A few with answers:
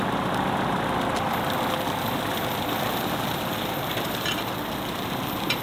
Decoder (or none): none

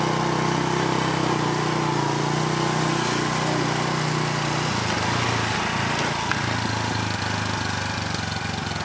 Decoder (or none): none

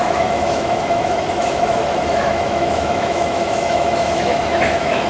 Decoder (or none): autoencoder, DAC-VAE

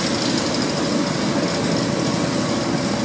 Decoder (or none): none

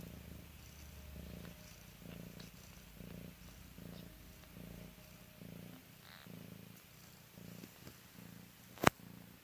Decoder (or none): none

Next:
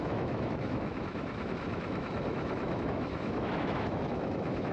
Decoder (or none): autoencoder, DAC-VAE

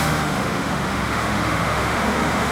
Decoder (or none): autoencoder, DAC-VAE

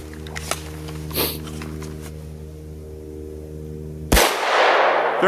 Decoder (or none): none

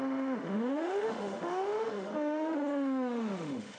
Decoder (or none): autoencoder, DAC-VAE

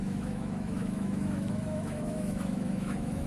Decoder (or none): autoencoder, DAC-VAE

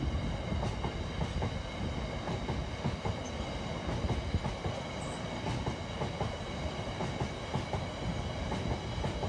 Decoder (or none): none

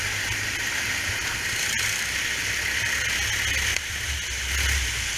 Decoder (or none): none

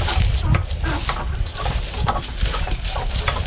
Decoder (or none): none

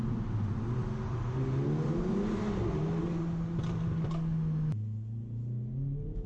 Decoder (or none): none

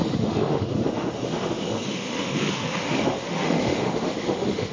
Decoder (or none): autoencoder, DAC-VAE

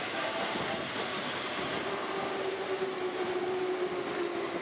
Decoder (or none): none